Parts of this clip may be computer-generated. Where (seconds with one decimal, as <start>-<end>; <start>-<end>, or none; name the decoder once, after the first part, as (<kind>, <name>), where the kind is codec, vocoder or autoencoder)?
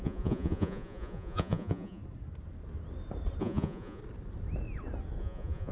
0.0-2.0 (vocoder, Vocos); 3.4-4.0; 5.2-5.7